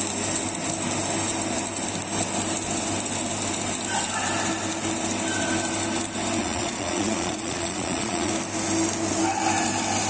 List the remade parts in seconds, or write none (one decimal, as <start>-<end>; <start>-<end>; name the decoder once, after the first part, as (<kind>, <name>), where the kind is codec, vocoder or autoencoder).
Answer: 6.4-8.3 (vocoder, Vocos)